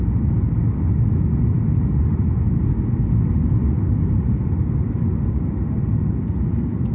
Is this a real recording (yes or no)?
yes